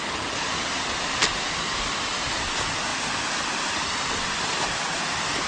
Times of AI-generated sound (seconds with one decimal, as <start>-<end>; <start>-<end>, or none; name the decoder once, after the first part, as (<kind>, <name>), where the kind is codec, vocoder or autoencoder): none